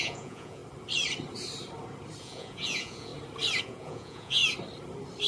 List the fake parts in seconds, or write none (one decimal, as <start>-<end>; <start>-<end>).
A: 0.0-0.6; 2.2-3.1; 3.6-4.4